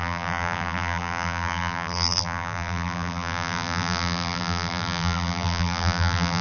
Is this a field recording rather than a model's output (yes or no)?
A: no